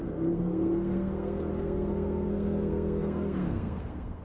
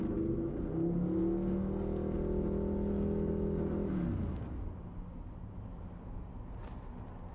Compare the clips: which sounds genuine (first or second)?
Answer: second